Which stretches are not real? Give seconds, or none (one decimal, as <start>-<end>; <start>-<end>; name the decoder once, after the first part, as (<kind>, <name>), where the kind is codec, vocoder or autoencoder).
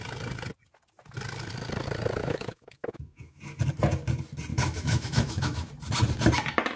2.2-3.4 (autoencoder, DAC-VAE); 4.5-5.7